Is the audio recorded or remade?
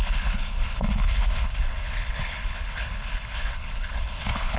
remade